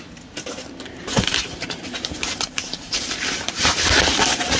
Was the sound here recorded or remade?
recorded